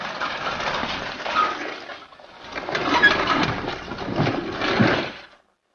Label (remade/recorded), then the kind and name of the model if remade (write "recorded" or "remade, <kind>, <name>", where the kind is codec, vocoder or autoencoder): recorded